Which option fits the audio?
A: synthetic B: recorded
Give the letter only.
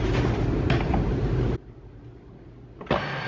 B